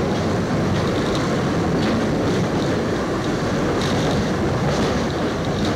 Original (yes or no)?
yes